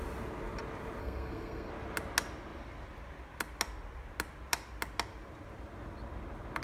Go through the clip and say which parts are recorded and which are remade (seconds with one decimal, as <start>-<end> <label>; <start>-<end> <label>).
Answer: 0.0-1.0 recorded; 1.0-1.7 remade; 1.7-6.6 recorded